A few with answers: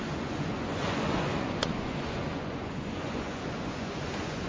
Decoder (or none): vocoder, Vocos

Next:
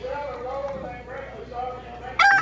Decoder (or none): none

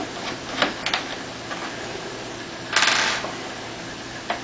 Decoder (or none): none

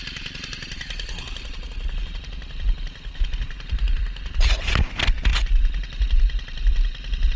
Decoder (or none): none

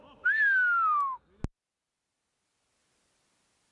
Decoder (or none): none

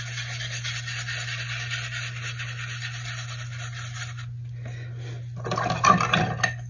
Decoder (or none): none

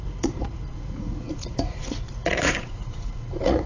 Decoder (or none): vocoder, Vocos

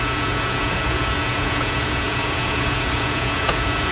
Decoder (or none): vocoder, Vocos